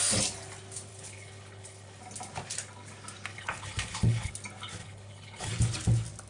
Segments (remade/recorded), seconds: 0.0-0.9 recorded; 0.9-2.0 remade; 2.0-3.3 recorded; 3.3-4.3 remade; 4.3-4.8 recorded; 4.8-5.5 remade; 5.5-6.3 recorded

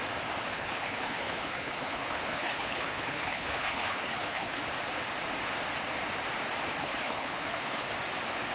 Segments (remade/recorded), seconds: 0.0-0.5 recorded; 0.5-4.6 remade; 4.6-6.8 recorded; 6.8-7.9 remade; 7.9-8.5 recorded

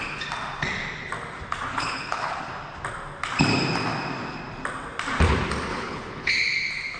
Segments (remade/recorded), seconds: 0.0-1.7 recorded; 1.7-2.5 remade; 2.5-5.7 recorded; 5.7-6.3 remade; 6.3-7.0 recorded